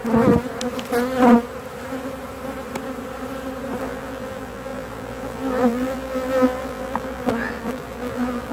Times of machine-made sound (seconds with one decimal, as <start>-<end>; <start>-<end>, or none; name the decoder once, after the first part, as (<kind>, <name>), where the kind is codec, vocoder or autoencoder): 3.8-8.5 (vocoder, BigVGAN v2)